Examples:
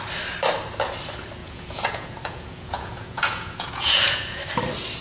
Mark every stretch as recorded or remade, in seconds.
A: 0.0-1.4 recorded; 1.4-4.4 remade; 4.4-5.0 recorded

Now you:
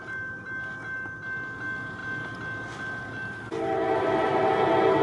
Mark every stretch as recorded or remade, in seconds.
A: 0.0-5.0 recorded